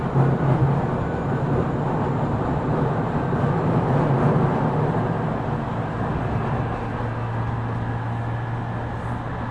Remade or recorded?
recorded